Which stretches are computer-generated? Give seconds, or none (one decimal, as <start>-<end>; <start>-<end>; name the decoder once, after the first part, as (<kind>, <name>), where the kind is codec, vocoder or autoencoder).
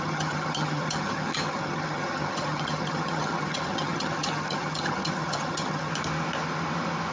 0.0-5.9 (vocoder, HiFi-GAN)